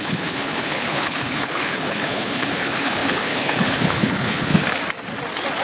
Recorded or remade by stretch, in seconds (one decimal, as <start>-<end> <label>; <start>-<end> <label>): 0.0-4.6 remade; 4.6-5.6 recorded